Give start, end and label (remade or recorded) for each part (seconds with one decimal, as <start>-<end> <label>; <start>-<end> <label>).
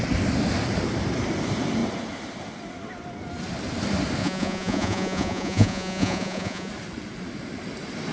0.0-4.2 recorded; 4.2-6.7 remade; 6.7-8.1 recorded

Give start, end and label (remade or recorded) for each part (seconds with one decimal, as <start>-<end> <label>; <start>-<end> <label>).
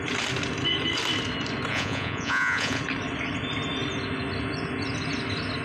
0.0-1.7 recorded; 1.7-2.8 remade; 2.8-5.6 recorded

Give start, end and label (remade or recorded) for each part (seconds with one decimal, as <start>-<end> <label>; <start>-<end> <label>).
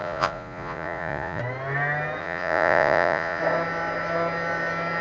0.0-1.4 remade; 1.4-2.2 recorded; 2.2-3.4 remade; 3.4-5.0 recorded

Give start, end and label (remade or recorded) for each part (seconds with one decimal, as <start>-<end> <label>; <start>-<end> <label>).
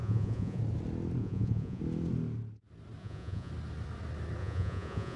0.0-0.6 remade; 0.6-1.2 recorded; 1.2-1.8 remade; 1.8-3.0 recorded; 3.0-3.5 remade; 3.5-4.4 recorded; 4.4-5.2 remade